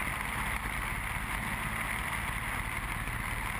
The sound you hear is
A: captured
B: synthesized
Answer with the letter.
A